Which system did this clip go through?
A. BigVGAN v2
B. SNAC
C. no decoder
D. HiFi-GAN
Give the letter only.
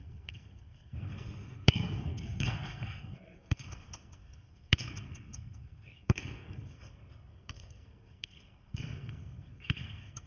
B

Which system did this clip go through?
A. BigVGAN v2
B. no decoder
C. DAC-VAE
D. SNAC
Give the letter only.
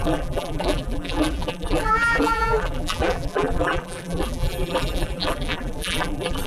A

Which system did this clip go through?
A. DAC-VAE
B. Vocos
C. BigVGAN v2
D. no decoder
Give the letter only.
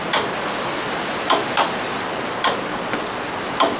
D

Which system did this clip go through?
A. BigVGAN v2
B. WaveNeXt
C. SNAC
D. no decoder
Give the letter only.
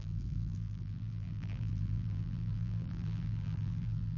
A